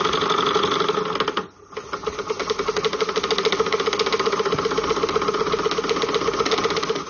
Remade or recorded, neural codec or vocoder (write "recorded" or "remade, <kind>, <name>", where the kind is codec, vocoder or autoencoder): recorded